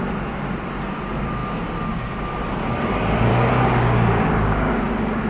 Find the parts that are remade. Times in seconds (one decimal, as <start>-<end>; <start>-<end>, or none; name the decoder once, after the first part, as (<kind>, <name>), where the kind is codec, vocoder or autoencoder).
3.3-4.8 (codec, DAC)